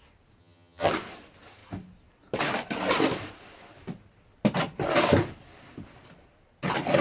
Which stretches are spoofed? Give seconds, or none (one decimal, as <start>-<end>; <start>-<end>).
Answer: 0.4-0.9